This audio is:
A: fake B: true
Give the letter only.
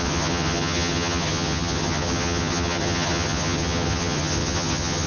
A